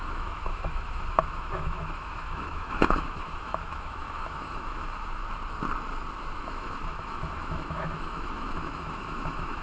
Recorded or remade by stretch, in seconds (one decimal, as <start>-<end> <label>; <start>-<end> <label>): 0.0-5.2 remade; 5.2-6.4 recorded; 6.4-9.6 remade